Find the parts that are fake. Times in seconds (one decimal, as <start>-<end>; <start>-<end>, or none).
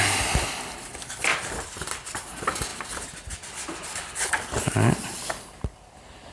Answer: 1.3-2.1; 2.7-4.3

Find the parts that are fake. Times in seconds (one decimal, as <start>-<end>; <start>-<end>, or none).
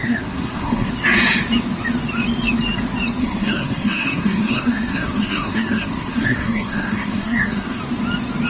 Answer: 0.0-0.9; 3.2-7.8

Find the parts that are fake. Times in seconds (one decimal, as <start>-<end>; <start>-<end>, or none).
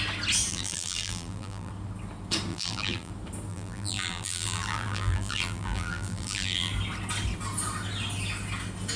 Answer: 0.5-1.7; 2.5-3.1; 3.5-6.7